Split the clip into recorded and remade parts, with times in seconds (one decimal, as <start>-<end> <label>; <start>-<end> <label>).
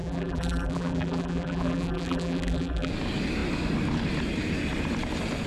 0.0-2.9 remade; 2.9-5.5 recorded